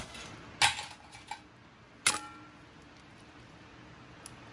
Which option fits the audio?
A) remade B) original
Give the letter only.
B